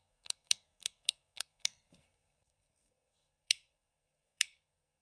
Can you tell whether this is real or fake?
fake